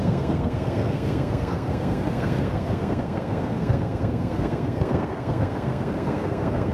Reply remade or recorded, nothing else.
remade